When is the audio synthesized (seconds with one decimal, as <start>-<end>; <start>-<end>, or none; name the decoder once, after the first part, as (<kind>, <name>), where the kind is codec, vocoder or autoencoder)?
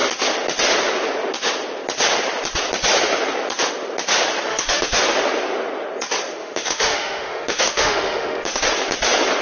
4.5-5.0 (autoencoder, DAC-VAE); 6.4-8.6